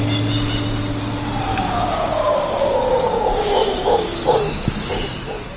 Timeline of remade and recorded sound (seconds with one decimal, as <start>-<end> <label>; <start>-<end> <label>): 0.0-1.5 recorded; 1.5-4.9 remade; 4.9-5.6 recorded